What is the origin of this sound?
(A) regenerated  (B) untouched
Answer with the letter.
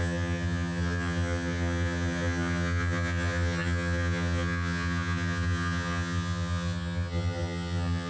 A